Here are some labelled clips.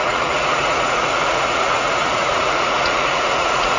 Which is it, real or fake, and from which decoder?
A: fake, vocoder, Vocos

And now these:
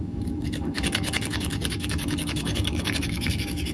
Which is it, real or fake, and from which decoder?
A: fake, codec, DAC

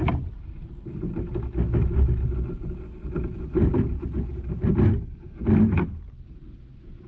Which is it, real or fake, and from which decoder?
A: real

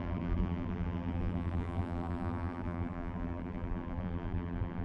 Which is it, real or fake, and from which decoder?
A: fake, vocoder, BigVGAN v2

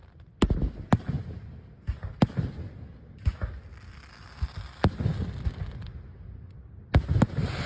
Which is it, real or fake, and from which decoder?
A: real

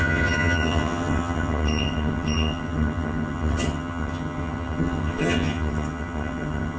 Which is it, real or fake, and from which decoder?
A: fake, vocoder, HiFi-GAN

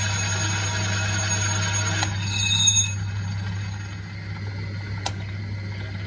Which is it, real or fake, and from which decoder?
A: real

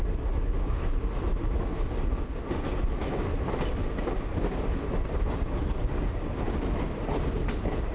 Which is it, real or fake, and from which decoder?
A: real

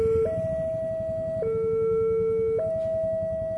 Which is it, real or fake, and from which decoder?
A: real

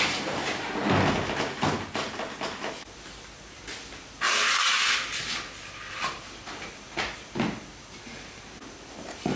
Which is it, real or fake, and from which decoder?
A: real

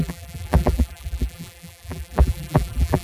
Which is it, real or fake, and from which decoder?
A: fake, vocoder, BigVGAN v2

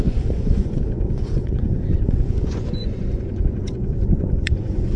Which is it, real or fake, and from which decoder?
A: fake, vocoder, Vocos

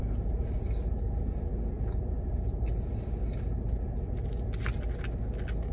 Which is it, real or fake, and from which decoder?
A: real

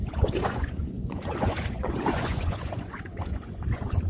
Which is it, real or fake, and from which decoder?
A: fake, vocoder, Vocos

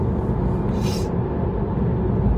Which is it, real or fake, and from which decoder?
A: real